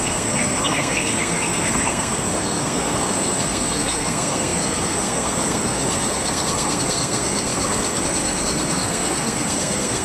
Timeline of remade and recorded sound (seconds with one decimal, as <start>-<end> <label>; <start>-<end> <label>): 0.0-10.0 remade